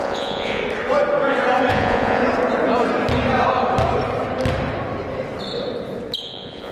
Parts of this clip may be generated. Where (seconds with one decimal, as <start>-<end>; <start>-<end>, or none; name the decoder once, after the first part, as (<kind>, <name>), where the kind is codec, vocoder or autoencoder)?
0.0-0.6 (vocoder, Vocos); 1.7-2.2; 6.2-6.7